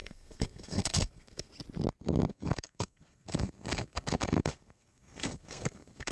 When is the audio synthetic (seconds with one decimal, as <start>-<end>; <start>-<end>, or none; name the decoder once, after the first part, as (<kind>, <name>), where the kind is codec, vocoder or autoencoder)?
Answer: 0.0-1.5 (codec, SNAC); 2.3-6.1